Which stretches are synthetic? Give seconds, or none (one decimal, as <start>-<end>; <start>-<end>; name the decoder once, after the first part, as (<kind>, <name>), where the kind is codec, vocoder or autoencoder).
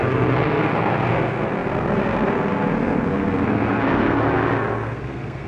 0.0-5.5 (codec, SNAC)